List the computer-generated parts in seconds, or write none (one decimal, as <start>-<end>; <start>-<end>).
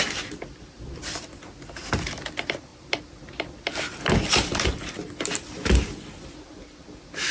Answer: none